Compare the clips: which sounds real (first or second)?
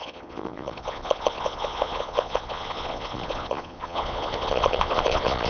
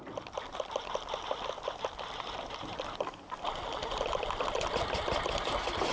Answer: second